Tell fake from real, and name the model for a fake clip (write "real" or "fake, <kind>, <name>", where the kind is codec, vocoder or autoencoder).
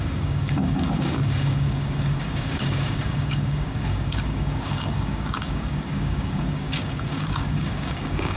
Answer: fake, codec, DAC